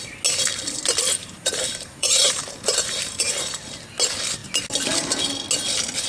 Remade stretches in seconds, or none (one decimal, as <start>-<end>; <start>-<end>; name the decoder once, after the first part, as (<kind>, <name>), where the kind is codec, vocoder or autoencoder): 1.2-3.5 (vocoder, BigVGAN v2)